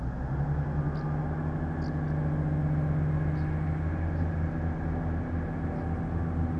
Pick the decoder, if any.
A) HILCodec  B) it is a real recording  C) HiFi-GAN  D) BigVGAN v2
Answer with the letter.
B